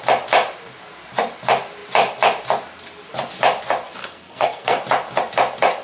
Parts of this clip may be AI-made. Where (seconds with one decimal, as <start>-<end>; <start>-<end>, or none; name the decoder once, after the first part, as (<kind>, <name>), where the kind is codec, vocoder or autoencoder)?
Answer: 4.0-4.8 (codec, SNAC)